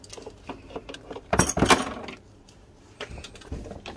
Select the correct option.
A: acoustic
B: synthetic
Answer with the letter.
A